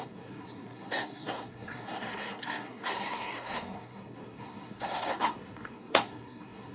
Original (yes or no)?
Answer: no